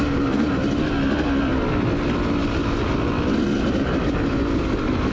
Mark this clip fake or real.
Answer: real